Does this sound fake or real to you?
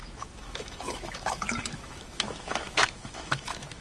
fake